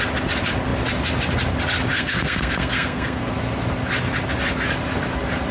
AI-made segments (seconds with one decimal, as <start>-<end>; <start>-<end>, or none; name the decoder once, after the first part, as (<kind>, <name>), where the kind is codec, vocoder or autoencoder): 1.9-3.2 (codec, SNAC)